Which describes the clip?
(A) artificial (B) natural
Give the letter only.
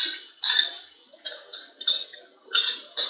B